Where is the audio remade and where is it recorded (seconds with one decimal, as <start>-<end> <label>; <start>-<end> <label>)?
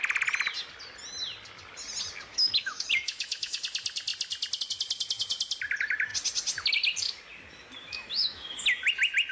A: 0.0-2.3 recorded; 2.3-3.6 remade; 3.6-7.8 recorded; 7.8-8.6 remade; 8.6-9.3 recorded